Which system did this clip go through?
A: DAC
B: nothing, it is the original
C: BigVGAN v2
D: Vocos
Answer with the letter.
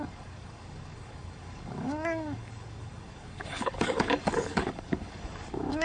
A